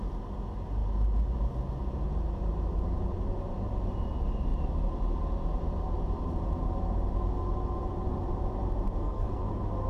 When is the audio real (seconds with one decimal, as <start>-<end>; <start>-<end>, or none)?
0.0-9.0; 9.5-9.9